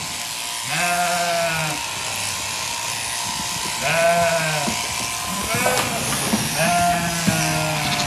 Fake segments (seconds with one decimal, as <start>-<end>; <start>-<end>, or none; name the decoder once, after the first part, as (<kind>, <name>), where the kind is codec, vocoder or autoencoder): none